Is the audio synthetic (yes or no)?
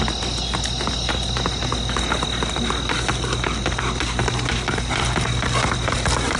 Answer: no